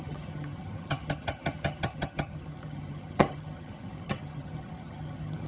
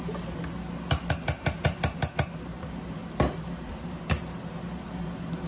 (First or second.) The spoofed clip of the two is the first